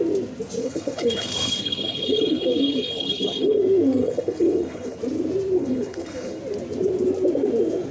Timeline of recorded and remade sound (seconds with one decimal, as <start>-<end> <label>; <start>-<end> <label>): 0.0-0.6 recorded; 0.6-3.6 remade; 3.6-4.0 recorded; 4.0-5.0 remade; 5.0-5.6 recorded; 5.6-6.4 remade; 6.4-7.9 recorded